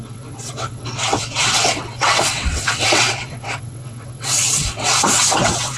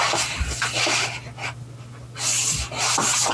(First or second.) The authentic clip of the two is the second